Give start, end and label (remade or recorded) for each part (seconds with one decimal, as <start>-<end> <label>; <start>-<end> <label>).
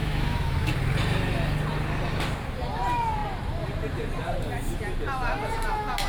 0.0-0.7 remade; 0.7-6.1 recorded